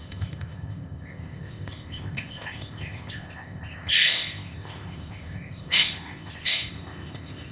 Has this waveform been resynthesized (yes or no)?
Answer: yes